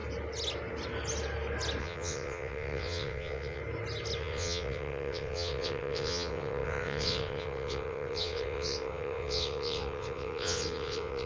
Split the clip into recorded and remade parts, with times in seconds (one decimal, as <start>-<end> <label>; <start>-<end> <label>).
0.0-1.8 recorded; 1.8-3.6 remade; 3.6-4.2 recorded; 4.2-11.3 remade